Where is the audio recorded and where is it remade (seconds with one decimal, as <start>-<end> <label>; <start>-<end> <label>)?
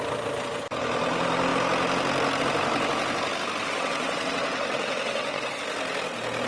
0.0-3.6 recorded; 3.6-5.6 remade; 5.6-6.5 recorded